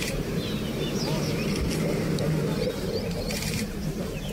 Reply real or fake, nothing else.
fake